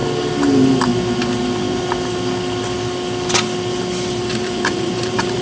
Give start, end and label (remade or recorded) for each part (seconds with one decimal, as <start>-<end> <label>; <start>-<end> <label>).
0.0-0.5 recorded; 0.5-0.9 remade; 0.9-4.1 recorded; 4.1-5.4 remade